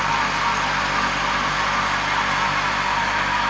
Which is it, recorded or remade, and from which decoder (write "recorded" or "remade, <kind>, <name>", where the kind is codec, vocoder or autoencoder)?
recorded